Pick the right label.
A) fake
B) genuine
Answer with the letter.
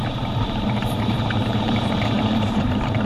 A